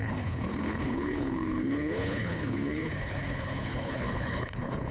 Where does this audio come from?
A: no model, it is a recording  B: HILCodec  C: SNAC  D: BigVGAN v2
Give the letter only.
B